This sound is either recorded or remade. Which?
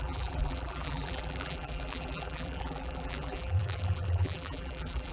remade